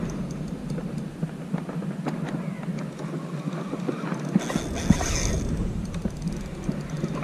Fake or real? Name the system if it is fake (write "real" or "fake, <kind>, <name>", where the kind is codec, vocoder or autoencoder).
real